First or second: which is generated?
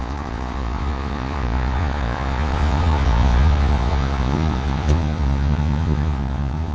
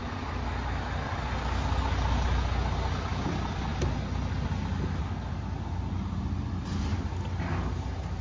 first